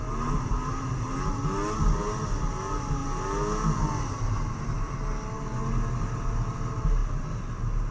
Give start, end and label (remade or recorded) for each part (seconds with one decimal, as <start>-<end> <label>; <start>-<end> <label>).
0.0-7.9 recorded